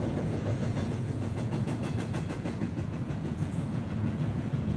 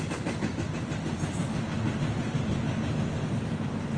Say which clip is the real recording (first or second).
second